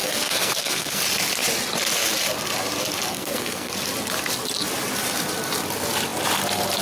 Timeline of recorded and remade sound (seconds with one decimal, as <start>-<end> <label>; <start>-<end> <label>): 0.0-1.0 remade; 1.0-3.1 recorded; 3.1-3.7 remade; 3.7-6.8 recorded